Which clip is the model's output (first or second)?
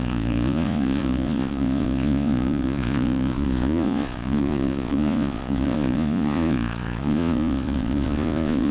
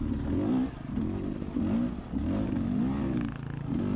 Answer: first